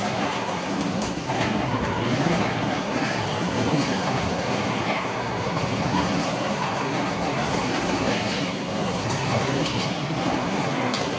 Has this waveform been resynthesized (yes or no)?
yes